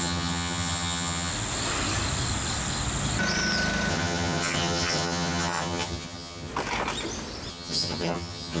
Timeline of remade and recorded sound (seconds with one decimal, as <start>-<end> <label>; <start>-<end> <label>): 0.0-1.3 remade; 1.3-3.9 recorded; 3.9-6.5 remade; 6.5-7.5 recorded; 7.5-8.6 remade